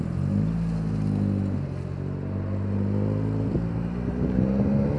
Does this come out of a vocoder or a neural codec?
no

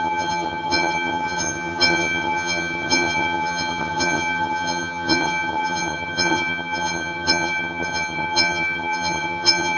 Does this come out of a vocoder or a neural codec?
yes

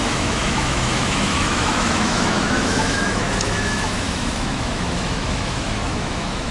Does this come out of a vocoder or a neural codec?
yes